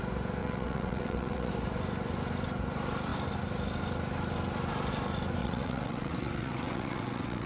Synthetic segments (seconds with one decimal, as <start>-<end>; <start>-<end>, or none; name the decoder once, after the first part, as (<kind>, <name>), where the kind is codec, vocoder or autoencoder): 0.4-1.5 (vocoder, WaveNeXt); 5.4-7.5